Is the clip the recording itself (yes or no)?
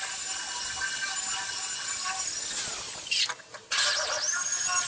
yes